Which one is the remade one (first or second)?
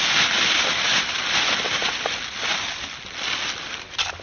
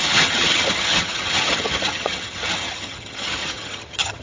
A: second